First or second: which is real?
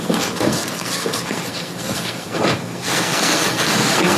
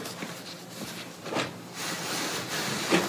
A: second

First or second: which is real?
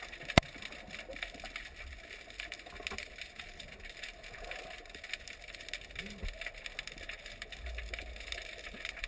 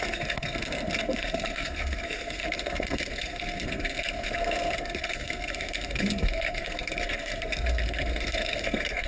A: first